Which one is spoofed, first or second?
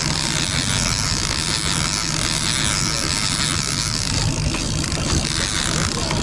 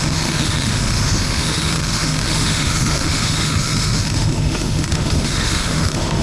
second